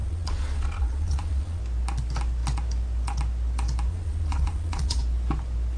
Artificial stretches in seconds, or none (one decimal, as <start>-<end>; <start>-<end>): 0.0-1.6; 3.9-5.0